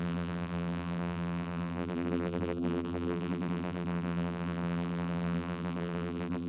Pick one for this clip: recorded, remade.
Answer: remade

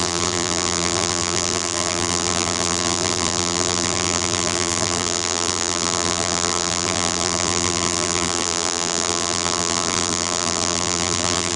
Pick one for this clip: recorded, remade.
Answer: remade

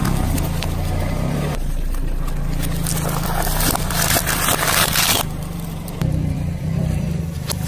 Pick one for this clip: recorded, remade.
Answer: remade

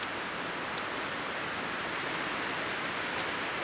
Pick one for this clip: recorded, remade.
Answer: recorded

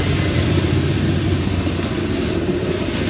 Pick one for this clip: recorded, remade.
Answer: remade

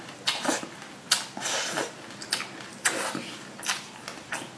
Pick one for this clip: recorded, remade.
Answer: recorded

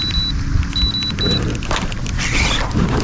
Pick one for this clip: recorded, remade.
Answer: recorded